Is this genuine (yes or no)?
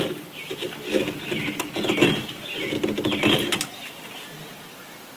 yes